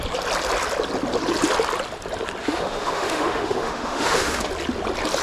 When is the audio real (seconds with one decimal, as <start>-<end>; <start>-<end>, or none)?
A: 0.0-2.4; 4.5-5.2